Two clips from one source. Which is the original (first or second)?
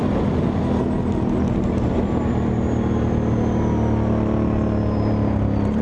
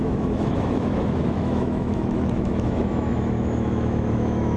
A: first